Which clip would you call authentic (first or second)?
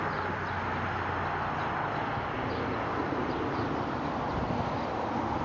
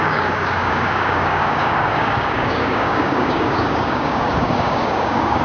first